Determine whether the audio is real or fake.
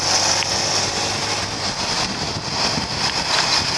real